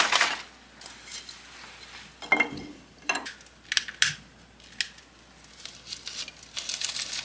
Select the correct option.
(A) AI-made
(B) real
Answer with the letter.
B